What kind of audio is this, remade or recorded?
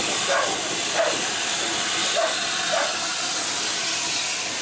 recorded